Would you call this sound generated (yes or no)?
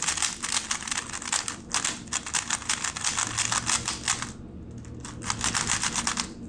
no